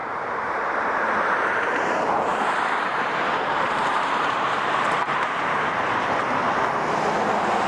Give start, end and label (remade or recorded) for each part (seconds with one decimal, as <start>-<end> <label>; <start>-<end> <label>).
0.0-0.7 remade; 0.7-2.3 recorded; 2.3-6.6 remade; 6.6-7.7 recorded

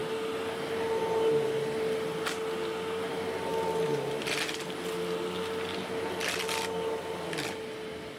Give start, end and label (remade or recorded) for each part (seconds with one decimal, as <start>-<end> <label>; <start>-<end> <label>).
0.0-8.2 recorded

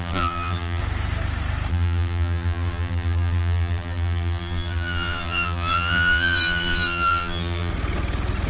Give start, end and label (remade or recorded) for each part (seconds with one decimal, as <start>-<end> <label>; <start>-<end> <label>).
0.0-0.8 remade; 0.8-1.7 recorded; 1.7-7.7 remade; 7.7-8.5 recorded

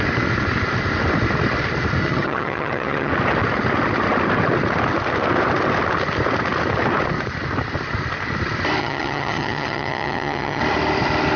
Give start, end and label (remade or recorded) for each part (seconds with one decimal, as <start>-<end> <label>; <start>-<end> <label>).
0.0-2.0 recorded; 2.0-3.1 remade; 3.1-8.8 recorded; 8.8-10.6 remade; 10.6-11.4 recorded

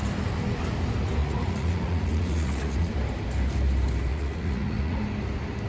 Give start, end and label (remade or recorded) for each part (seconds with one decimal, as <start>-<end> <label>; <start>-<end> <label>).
0.0-1.2 recorded; 1.2-2.9 remade; 2.9-4.1 recorded; 4.1-5.0 remade; 5.0-5.7 recorded